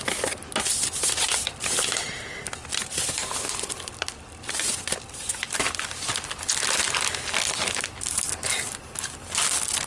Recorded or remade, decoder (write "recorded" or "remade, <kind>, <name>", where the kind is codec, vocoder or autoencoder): recorded